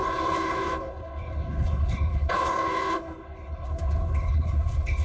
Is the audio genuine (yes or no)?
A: no